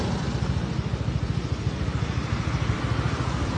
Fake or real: real